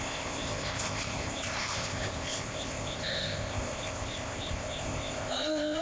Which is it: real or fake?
fake